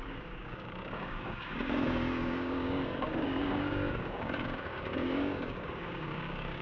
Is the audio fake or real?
fake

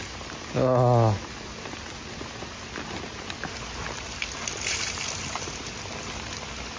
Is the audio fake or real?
real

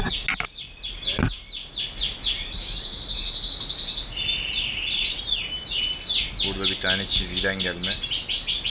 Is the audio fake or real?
real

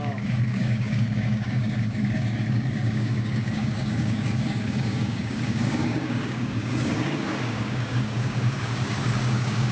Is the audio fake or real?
fake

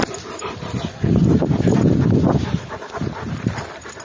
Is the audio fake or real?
real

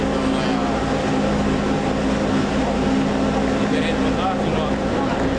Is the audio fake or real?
real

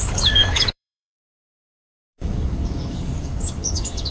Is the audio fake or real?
fake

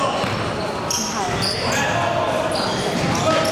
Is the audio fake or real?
real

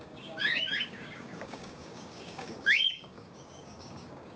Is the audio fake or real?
fake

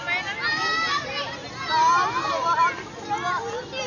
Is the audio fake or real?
real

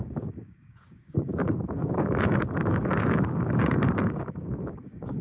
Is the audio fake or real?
fake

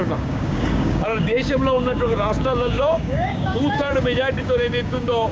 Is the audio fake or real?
fake